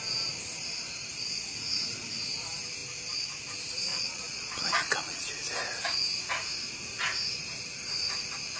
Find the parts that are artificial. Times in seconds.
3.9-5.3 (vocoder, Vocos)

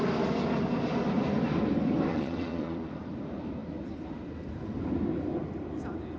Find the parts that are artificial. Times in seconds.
2.1-2.9 (vocoder, Vocos)

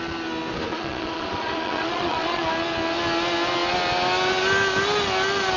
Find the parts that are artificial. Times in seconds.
0.7-2.5 (vocoder, Vocos)

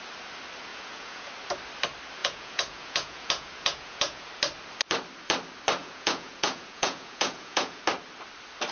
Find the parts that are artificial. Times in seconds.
0.7-1.3 (vocoder, Vocos); 2.2-4.3; 5.8-7.8

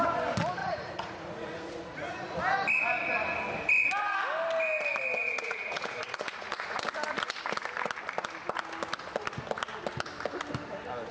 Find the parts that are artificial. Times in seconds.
0.6-2.4 (vocoder, Vocos); 5.2-6.8

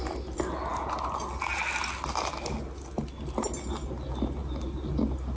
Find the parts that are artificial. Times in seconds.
none

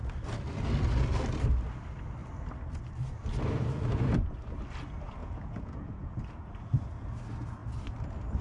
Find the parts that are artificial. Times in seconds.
5.2-6.1 (vocoder, Vocos)

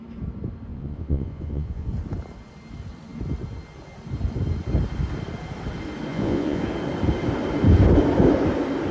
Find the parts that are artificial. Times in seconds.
0.7-1.9 (vocoder, Vocos); 6.1-6.6